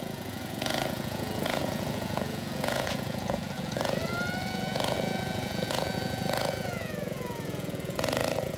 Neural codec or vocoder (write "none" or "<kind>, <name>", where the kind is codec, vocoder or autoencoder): vocoder, Vocos